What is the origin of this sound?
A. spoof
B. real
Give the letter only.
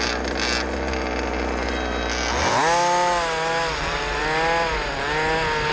B